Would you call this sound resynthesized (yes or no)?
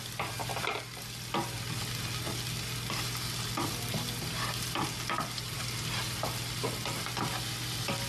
no